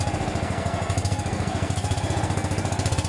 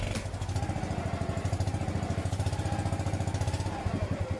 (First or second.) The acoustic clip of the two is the second